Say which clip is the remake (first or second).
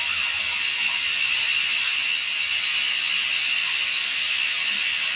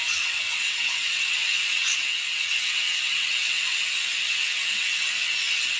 second